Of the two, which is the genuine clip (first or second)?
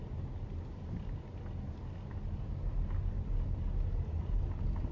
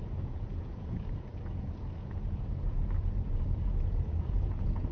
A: first